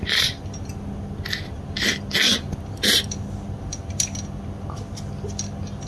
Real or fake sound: real